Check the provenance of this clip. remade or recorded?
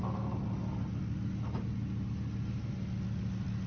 recorded